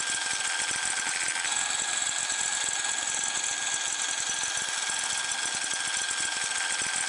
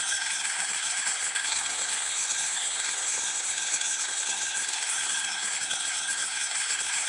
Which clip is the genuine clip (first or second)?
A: first